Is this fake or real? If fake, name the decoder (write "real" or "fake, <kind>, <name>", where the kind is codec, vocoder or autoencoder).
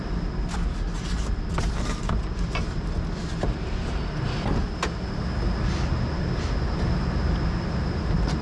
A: real